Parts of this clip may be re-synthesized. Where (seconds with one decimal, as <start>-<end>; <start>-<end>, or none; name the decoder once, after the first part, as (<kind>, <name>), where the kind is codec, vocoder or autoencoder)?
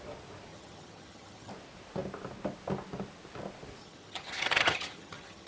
0.5-1.5 (vocoder, HiFi-GAN); 3.8-5.5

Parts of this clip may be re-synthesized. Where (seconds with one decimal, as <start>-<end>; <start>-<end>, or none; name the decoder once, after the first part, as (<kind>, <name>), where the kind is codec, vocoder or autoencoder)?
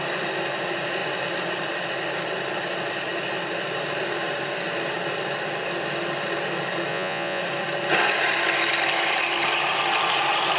6.9-7.4 (vocoder, Vocos)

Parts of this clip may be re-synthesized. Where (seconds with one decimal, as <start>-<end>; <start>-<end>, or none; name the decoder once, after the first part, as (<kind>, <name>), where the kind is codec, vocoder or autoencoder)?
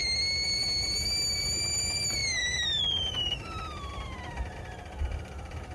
1.4-3.9 (vocoder, BigVGAN v2); 4.5-5.7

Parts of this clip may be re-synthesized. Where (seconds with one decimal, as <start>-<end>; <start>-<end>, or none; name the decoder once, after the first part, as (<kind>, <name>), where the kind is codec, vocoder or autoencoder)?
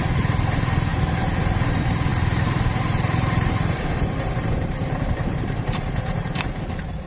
2.1-6.4 (vocoder, BigVGAN v2)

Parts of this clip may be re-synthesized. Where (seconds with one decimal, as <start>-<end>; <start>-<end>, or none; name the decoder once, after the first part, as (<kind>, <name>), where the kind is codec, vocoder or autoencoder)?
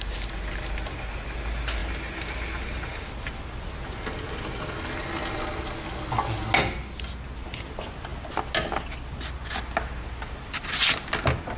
none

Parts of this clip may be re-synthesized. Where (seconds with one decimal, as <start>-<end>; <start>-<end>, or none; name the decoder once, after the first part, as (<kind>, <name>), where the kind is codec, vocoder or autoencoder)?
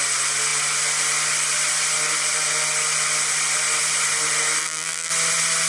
4.6-5.1 (vocoder, BigVGAN v2)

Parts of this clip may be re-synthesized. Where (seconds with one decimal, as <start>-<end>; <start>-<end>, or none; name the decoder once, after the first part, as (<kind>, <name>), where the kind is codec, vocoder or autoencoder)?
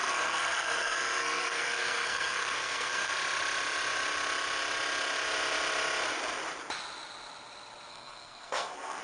0.0-3.1 (codec, SNAC); 7.9-9.0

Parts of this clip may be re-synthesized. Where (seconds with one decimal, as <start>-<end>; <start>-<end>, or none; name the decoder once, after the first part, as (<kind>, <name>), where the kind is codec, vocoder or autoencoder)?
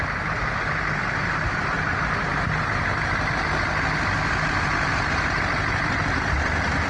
none